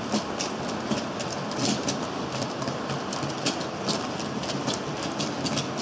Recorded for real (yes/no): yes